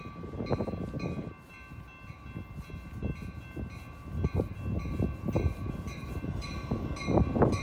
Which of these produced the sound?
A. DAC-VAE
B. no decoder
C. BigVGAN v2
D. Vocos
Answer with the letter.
B